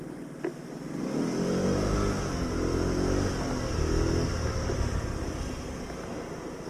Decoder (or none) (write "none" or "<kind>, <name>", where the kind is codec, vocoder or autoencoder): none